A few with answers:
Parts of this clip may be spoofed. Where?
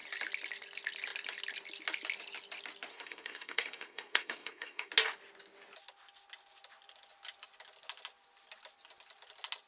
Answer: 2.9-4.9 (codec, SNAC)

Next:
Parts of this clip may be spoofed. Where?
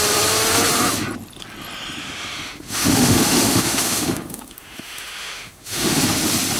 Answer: 2.0-6.0 (autoencoder, DAC-VAE)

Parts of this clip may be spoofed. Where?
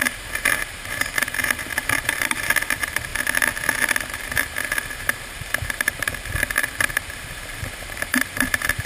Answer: 0.0-3.1 (vocoder, BigVGAN v2); 4.1-8.9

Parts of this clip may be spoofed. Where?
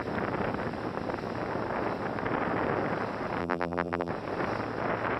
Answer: 3.4-4.1 (vocoder, BigVGAN v2)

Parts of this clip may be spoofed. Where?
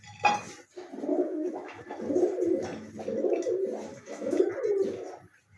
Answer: 1.1-1.8 (autoencoder, DAC-VAE); 3.9-4.5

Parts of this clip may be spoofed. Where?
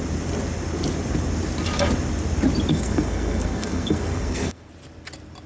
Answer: 2.7-4.7 (codec, SNAC)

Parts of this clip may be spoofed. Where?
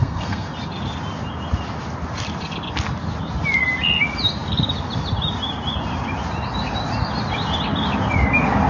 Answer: 0.0-0.5 (codec, SNAC)